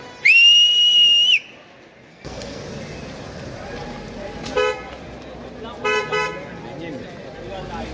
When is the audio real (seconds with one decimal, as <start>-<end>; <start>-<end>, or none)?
0.0-2.1; 2.6-7.9